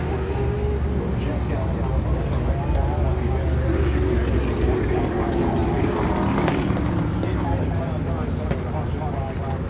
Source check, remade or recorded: recorded